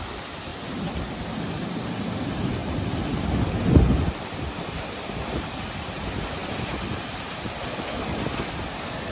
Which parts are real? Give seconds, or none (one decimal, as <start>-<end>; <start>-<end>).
0.0-9.1